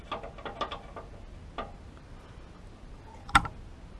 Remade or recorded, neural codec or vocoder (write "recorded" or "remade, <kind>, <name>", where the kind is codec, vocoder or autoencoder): recorded